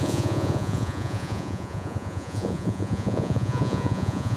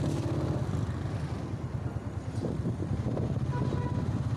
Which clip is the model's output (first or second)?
first